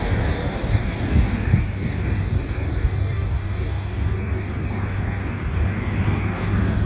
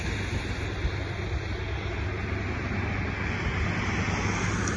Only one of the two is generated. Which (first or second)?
first